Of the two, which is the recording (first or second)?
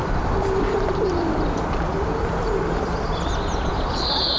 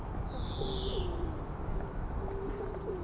second